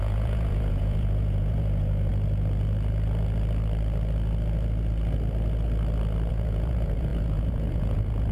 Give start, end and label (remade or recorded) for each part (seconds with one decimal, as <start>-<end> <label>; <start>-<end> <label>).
0.0-2.1 remade; 2.1-6.3 recorded; 6.3-8.3 remade